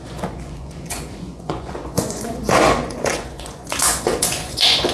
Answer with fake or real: fake